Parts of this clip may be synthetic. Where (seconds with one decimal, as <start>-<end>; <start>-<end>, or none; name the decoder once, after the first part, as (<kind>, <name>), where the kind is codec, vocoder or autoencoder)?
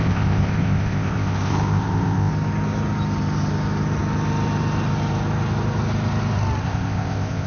0.0-2.3 (codec, ZipCodec); 6.6-7.5